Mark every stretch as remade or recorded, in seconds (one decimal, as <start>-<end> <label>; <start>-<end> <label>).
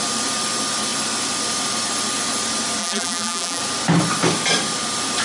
0.0-2.8 recorded; 2.8-3.6 remade; 3.6-5.2 recorded